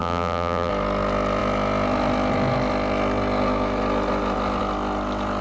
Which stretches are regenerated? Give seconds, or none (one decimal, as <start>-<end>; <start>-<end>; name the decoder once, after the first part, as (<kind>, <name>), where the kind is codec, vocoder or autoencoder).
0.0-0.7 (vocoder, BigVGAN v2)